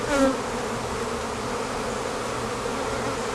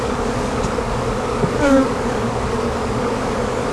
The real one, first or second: first